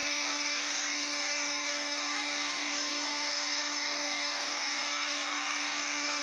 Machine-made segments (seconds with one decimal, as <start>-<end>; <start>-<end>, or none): 0.0-6.2